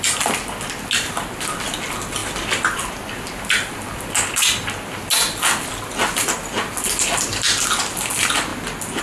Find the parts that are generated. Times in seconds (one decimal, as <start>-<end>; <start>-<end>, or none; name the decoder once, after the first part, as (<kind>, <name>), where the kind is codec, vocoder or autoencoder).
none